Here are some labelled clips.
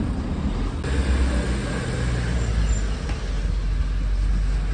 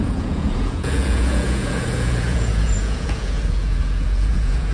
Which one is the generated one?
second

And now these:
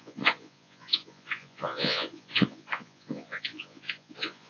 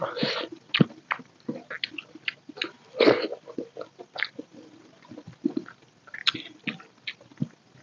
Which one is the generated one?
first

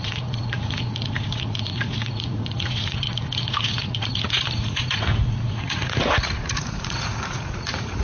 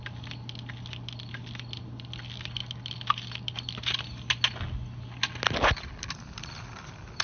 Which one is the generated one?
first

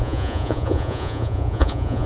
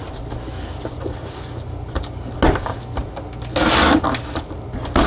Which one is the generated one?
first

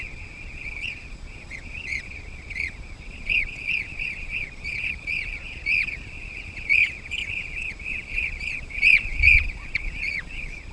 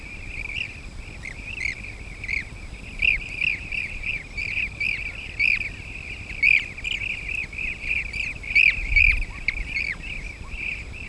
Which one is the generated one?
first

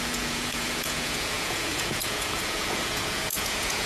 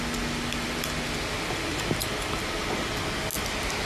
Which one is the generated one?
first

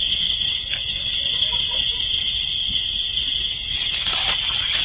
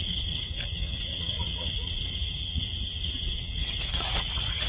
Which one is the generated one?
second